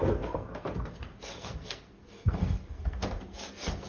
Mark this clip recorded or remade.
remade